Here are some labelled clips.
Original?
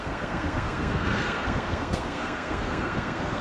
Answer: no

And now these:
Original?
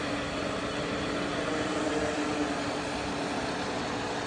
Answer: yes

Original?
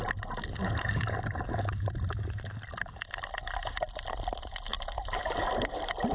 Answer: yes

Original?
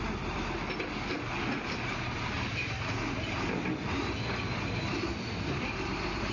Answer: yes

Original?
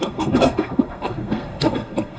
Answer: no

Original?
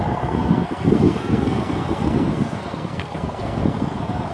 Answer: no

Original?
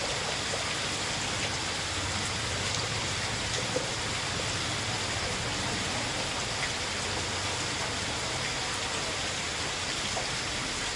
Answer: yes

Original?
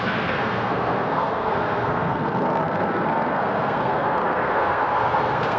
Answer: no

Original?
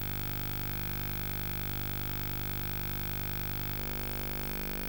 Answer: yes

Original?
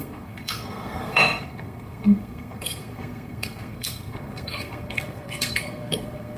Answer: no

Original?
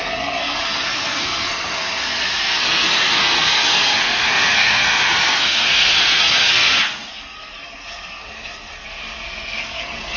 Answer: no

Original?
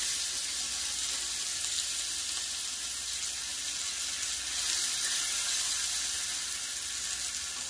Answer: yes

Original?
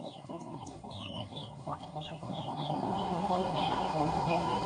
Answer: no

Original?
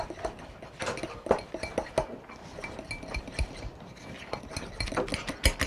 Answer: yes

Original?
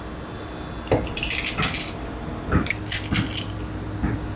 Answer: yes